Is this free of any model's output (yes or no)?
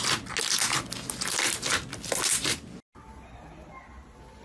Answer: yes